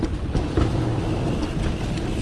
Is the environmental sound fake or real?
real